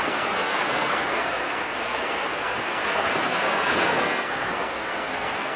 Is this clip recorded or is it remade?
remade